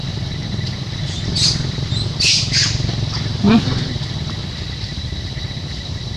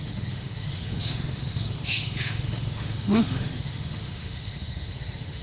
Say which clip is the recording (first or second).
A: first